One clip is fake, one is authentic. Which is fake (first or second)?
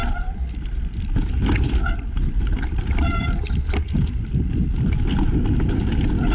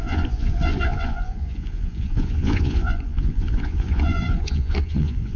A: second